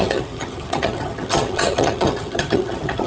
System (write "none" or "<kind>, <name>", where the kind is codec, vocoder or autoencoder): vocoder, HiFi-GAN